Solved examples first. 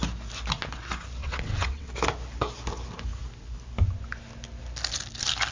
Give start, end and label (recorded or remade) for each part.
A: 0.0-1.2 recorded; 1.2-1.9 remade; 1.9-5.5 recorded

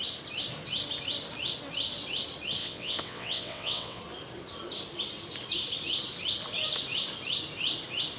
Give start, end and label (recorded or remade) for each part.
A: 0.0-2.6 recorded; 2.6-4.0 remade; 4.0-8.2 recorded

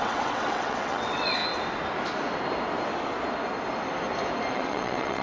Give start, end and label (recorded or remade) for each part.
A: 0.0-1.4 remade; 1.4-4.5 recorded; 4.5-5.2 remade

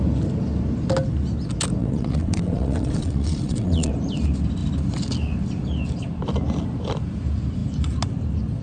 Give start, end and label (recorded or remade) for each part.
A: 0.0-1.8 recorded; 1.8-3.9 remade; 3.9-8.6 recorded

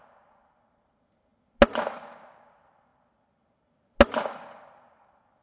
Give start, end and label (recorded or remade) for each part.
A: 0.0-5.4 recorded

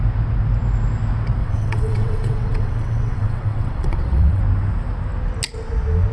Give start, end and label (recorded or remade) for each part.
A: 0.0-1.4 recorded; 1.4-4.4 remade; 4.4-6.1 recorded

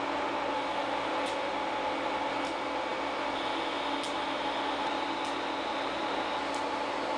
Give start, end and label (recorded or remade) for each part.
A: 0.0-7.2 recorded